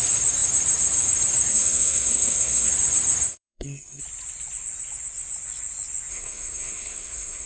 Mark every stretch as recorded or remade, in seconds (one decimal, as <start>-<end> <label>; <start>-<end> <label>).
0.0-1.5 recorded; 1.5-2.7 remade; 2.7-3.3 recorded; 3.3-4.0 remade; 4.0-6.1 recorded; 6.1-7.5 remade